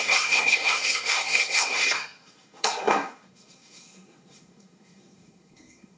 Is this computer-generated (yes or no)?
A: yes